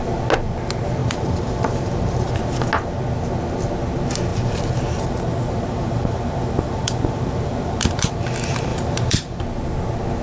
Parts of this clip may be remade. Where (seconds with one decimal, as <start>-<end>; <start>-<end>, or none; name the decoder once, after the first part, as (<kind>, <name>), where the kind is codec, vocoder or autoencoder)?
1.0-2.3 (vocoder, BigVGAN v2); 4.3-8.1; 8.7-9.4